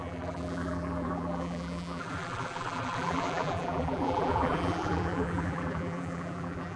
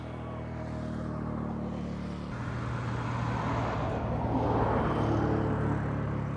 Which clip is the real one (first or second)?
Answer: second